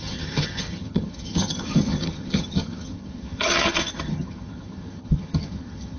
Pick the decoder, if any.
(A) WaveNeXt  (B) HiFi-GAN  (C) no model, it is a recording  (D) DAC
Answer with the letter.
B